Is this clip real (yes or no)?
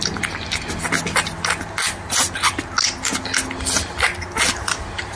yes